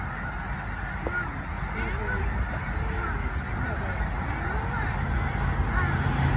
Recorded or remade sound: recorded